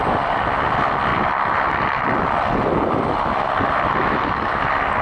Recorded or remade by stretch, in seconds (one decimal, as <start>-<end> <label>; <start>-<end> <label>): 0.0-4.0 recorded; 4.0-4.6 remade; 4.6-5.0 recorded